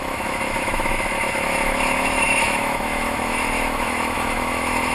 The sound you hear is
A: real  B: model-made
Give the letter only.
B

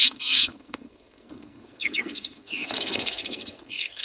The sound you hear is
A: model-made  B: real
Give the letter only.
A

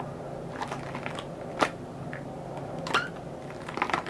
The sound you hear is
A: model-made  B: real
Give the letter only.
A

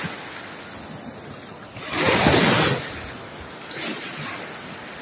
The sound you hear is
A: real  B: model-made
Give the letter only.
A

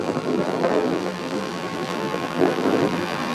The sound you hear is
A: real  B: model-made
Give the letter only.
B